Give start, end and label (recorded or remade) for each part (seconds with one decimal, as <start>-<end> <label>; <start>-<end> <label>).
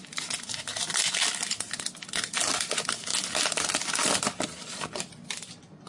0.0-5.9 recorded